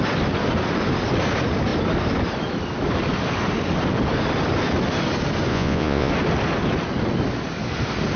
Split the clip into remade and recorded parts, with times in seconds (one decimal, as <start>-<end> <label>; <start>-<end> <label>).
0.0-5.5 recorded; 5.5-6.1 remade; 6.1-8.2 recorded